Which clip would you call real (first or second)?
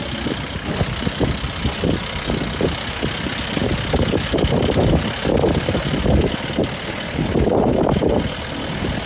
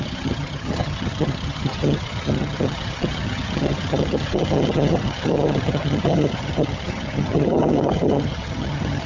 first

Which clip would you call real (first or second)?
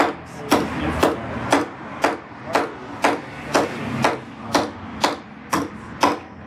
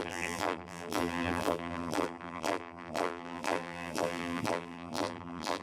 first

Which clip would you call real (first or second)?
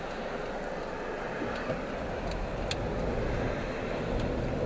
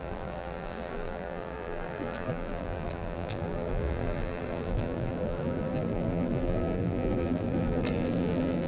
first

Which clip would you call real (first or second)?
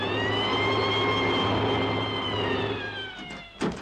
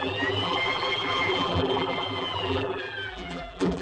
first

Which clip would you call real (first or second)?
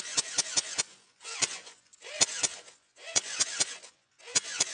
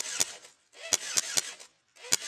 second